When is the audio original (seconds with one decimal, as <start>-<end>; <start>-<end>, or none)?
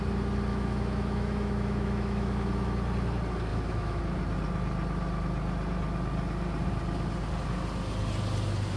0.0-0.5; 2.5-3.5; 4.0-8.8